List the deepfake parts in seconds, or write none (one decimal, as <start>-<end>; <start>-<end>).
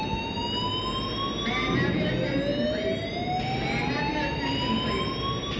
none